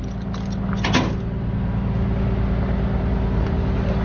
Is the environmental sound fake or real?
real